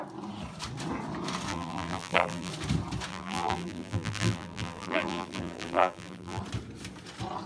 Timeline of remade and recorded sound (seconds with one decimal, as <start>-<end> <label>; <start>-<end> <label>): 0.0-1.5 recorded; 1.5-2.5 remade; 2.5-3.1 recorded; 3.1-6.4 remade; 6.4-7.5 recorded